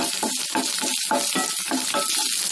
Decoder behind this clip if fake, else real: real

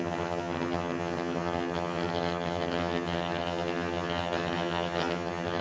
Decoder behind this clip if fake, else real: fake, vocoder, HiFi-GAN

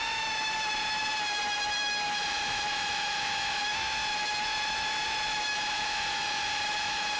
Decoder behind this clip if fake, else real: fake, autoencoder, DAC-VAE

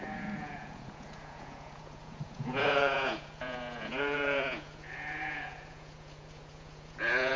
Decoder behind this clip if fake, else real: fake, vocoder, Vocos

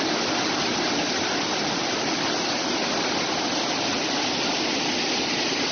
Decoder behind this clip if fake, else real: real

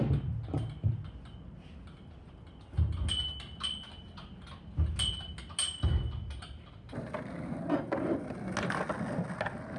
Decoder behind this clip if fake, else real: real